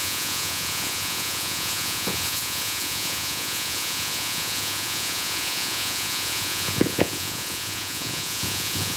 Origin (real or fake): fake